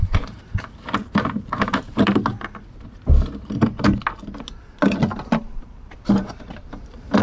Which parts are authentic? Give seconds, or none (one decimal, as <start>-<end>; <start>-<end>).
2.1-5.4